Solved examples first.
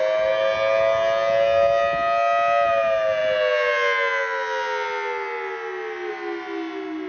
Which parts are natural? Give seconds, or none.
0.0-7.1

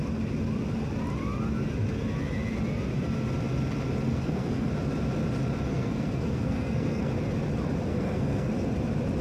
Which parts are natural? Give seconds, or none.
0.0-4.1; 4.7-5.7; 7.1-7.9; 8.5-9.2

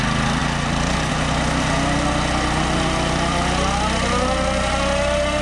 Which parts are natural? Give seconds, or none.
0.0-5.4

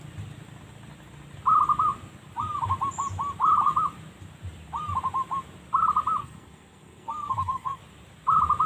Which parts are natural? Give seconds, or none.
0.0-6.2; 7.8-8.7

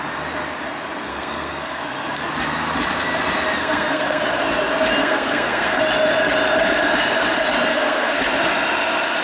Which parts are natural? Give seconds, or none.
0.0-1.1; 1.8-3.6; 4.2-5.0; 5.8-7.7; 8.2-9.2